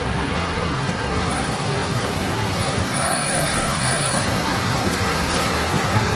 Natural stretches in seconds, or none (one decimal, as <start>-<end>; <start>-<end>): none